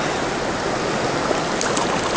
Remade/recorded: recorded